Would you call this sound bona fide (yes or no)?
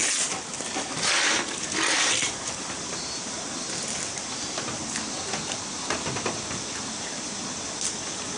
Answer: yes